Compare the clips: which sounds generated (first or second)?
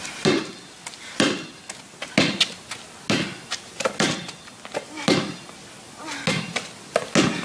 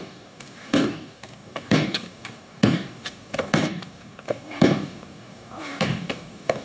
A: second